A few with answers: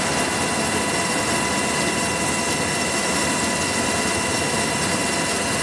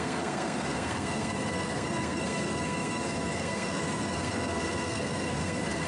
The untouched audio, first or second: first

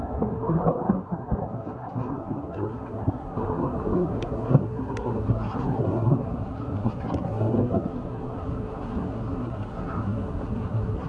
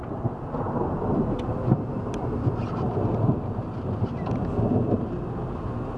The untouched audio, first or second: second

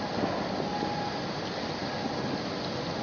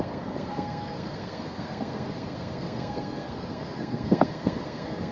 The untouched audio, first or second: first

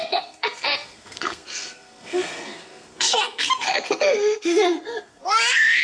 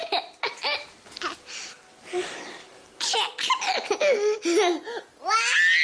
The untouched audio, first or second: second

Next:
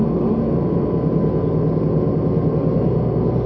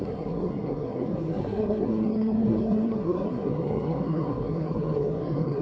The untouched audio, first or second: first